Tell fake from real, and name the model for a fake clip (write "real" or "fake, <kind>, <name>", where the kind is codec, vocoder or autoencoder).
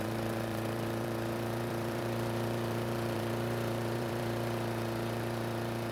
fake, vocoder, BigVGAN v2